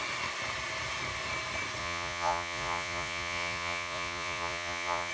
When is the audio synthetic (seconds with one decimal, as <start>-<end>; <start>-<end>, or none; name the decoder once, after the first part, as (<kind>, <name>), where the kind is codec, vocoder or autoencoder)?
1.8-5.1 (vocoder, Vocos)